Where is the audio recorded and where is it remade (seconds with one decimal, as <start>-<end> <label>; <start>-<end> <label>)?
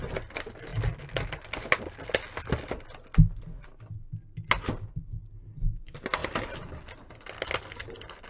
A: 0.0-8.3 recorded